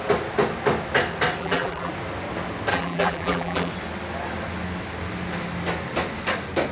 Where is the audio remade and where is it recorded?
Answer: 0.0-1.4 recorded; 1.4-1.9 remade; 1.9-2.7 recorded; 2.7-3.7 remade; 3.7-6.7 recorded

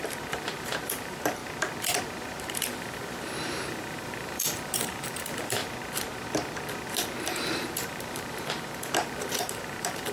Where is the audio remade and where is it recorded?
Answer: 0.0-1.4 remade; 1.4-2.4 recorded; 2.4-5.6 remade; 5.6-7.2 recorded; 7.2-10.1 remade

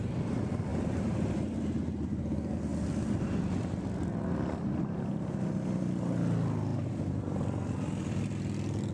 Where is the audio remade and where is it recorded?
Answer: 0.0-0.7 recorded; 0.7-1.3 remade; 1.3-6.7 recorded; 6.7-7.4 remade; 7.4-8.9 recorded

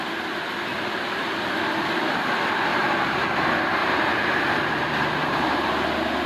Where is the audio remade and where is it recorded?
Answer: 0.0-2.7 recorded; 2.7-3.4 remade; 3.4-3.8 recorded; 3.8-5.7 remade; 5.7-6.3 recorded

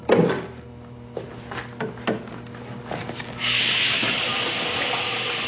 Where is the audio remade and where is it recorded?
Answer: 0.0-5.5 recorded

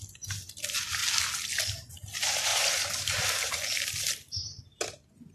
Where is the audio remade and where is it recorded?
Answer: 0.0-5.3 recorded

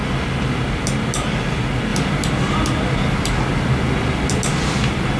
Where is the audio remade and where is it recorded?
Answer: 0.0-5.2 recorded